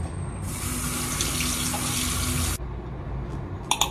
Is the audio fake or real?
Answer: real